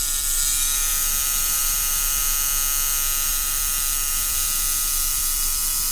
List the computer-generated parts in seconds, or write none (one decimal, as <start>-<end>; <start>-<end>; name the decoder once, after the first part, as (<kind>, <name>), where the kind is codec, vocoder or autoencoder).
0.0-2.2 (vocoder, BigVGAN v2); 3.3-5.9

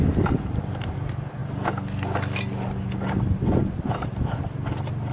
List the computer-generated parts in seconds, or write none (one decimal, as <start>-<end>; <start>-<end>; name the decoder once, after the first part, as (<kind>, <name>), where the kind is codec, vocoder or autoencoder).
0.0-5.1 (vocoder, BigVGAN v2)

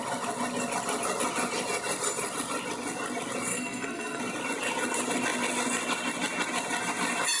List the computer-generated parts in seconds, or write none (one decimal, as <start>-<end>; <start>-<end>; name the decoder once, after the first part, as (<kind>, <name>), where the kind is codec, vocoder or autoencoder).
3.5-4.2 (codec, SNAC)

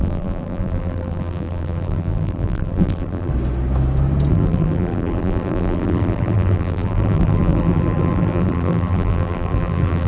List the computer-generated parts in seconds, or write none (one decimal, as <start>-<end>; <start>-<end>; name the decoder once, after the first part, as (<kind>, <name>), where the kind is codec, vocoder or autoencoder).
0.0-3.3 (vocoder, BigVGAN v2); 4.3-10.1

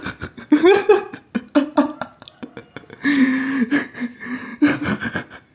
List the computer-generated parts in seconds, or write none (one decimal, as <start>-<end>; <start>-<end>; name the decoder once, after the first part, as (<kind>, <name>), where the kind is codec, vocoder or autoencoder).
none

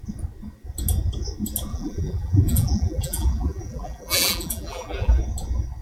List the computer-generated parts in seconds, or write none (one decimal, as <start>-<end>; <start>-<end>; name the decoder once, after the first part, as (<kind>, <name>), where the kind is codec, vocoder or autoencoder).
1.7-5.2 (vocoder, BigVGAN v2)